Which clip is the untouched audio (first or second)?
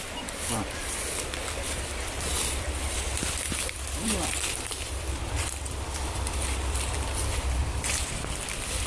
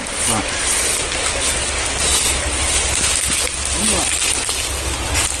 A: second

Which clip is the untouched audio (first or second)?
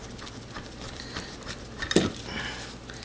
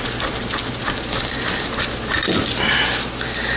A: second